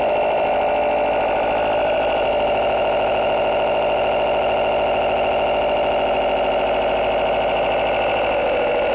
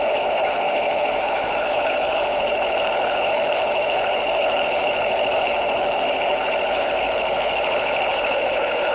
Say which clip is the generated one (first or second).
second